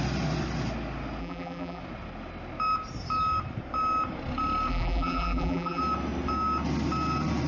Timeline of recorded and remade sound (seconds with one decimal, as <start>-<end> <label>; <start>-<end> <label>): 0.0-1.2 recorded; 1.2-1.8 remade; 1.8-4.7 recorded; 4.7-5.8 remade; 5.8-7.5 recorded